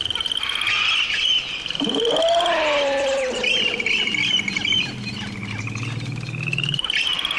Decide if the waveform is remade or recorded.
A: remade